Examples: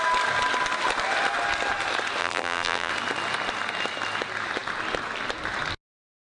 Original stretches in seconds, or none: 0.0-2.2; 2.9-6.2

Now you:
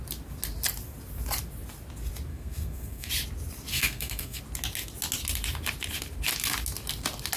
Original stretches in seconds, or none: 0.0-2.3; 3.1-3.7; 4.4-7.4

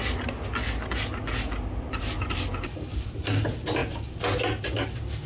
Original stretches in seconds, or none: 0.0-5.3

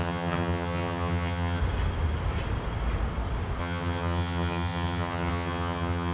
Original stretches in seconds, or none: 1.6-3.6

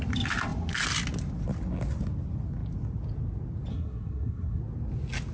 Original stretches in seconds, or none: 0.0-3.7; 4.6-5.3